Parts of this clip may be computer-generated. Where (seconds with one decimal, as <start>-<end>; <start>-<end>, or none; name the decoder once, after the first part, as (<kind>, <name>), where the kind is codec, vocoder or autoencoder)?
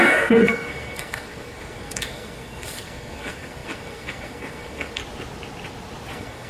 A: 0.0-5.0 (codec, SNAC); 6.1-6.5